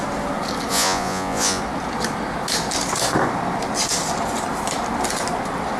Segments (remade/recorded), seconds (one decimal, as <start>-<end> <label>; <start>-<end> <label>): 0.0-0.7 recorded; 0.7-1.6 remade; 1.6-5.8 recorded